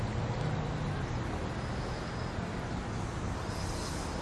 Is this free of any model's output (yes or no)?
yes